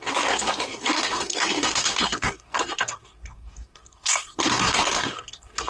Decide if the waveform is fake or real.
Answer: fake